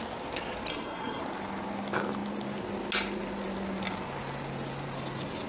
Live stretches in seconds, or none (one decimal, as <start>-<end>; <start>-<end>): 0.0-0.7; 1.2-5.5